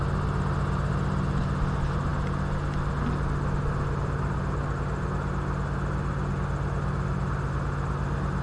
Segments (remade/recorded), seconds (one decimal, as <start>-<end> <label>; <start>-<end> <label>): 0.0-8.4 recorded